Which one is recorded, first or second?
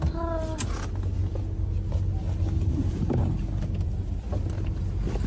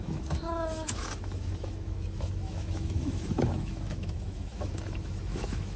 first